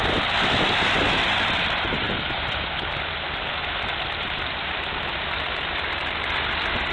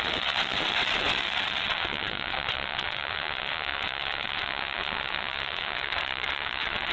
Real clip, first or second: first